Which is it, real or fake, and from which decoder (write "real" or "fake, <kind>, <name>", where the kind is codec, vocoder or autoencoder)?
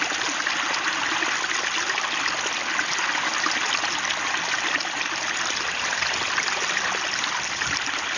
real